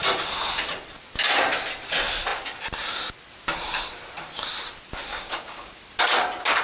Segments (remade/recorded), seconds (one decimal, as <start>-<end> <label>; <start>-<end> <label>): 0.0-5.1 recorded; 5.1-5.8 remade; 5.8-6.6 recorded